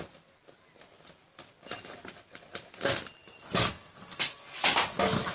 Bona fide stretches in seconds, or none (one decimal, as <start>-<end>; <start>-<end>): 0.0-3.2; 3.7-5.3